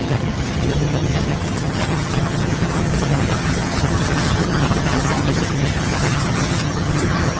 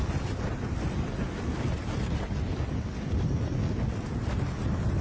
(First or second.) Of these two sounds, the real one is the second